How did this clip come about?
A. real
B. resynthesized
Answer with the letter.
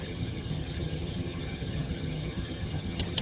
B